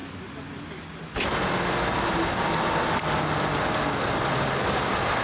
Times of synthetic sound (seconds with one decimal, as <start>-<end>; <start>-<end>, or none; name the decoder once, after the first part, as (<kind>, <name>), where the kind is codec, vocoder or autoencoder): none